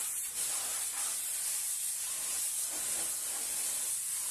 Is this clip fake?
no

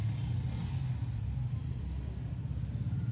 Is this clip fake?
no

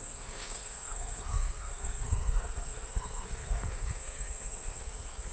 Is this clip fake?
yes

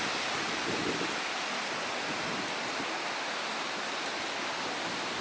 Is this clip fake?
no